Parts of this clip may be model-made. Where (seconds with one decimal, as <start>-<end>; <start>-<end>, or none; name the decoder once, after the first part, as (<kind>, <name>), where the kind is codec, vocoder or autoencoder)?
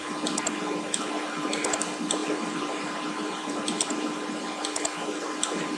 2.2-3.9 (vocoder, BigVGAN v2)